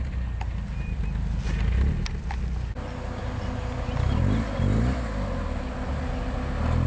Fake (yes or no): no